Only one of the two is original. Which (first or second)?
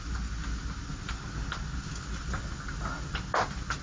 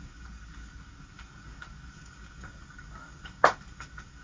first